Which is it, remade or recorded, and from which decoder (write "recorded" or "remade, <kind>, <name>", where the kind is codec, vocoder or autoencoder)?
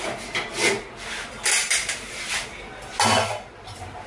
recorded